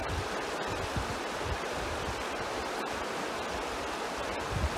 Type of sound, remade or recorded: recorded